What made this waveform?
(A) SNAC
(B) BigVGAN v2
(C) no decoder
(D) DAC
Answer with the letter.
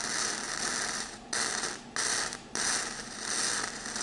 C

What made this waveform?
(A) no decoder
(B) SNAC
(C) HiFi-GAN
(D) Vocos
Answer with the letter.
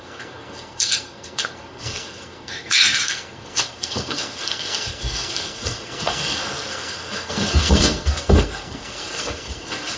B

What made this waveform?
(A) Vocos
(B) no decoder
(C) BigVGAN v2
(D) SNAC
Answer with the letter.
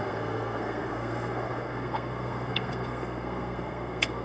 D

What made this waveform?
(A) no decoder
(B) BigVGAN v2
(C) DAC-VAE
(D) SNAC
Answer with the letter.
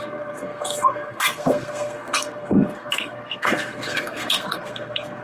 D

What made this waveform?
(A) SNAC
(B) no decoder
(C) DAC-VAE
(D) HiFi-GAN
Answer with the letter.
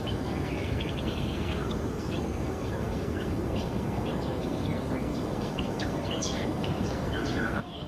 A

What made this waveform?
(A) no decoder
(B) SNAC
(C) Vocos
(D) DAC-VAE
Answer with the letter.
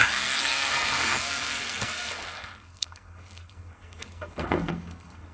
B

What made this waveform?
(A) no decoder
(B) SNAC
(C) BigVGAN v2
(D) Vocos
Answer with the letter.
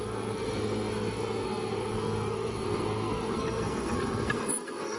B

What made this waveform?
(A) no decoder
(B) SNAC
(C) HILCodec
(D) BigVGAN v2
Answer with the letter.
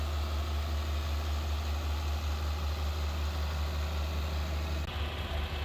A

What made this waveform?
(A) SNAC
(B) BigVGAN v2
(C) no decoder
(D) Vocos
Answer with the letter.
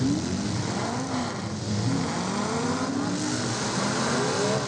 C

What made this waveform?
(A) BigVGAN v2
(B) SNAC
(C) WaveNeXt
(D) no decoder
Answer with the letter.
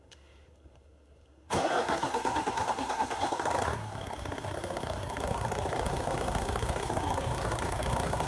B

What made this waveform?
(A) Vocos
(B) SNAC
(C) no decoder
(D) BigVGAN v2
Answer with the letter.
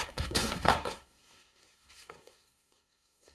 B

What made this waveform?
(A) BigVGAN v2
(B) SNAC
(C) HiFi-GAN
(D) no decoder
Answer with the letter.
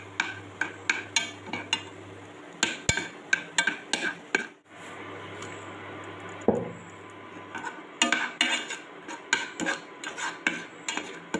D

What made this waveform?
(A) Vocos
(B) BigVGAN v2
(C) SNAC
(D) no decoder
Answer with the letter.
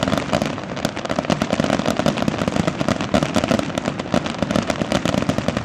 D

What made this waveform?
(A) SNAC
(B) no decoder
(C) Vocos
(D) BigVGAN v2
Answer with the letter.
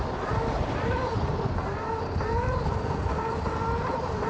B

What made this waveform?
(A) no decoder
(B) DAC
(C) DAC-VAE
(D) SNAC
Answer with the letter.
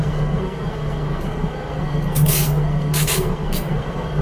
D